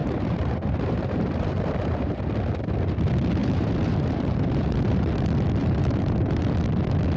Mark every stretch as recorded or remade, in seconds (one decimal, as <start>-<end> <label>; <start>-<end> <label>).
0.0-2.2 remade; 2.2-3.4 recorded; 3.4-5.1 remade; 5.1-5.6 recorded; 5.6-6.4 remade; 6.4-7.2 recorded